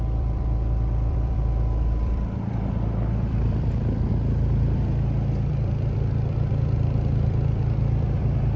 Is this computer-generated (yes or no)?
yes